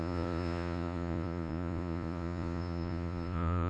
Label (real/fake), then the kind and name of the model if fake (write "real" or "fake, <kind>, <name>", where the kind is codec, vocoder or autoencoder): fake, vocoder, Vocos